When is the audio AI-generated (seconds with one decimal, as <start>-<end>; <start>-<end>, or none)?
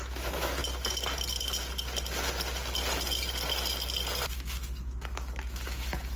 0.0-0.6; 4.3-6.2